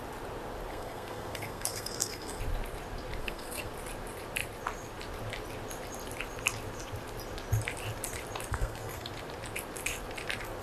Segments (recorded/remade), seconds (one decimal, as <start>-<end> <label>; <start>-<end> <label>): 0.0-0.7 recorded; 0.7-2.4 remade; 2.4-3.2 recorded; 3.2-3.7 remade; 3.7-8.5 recorded; 8.5-9.1 remade; 9.1-10.6 recorded